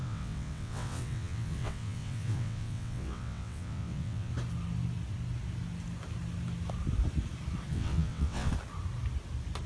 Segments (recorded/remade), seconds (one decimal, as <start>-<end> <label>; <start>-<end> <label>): 0.0-4.3 remade; 4.3-7.7 recorded; 7.7-8.5 remade; 8.5-9.7 recorded